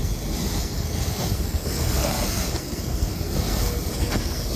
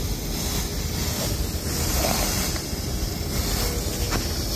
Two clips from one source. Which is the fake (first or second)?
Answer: first